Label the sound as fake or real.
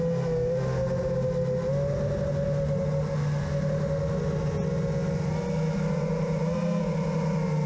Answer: real